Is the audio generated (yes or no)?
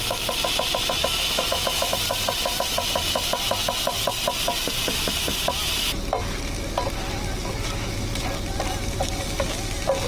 no